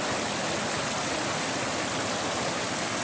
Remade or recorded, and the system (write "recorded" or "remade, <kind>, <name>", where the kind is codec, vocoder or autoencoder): recorded